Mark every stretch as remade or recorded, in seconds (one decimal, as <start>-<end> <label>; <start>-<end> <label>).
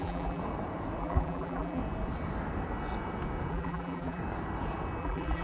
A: 0.0-0.4 remade; 0.4-1.0 recorded; 1.0-1.8 remade; 1.8-3.5 recorded; 3.5-4.2 remade; 4.2-5.0 recorded; 5.0-5.4 remade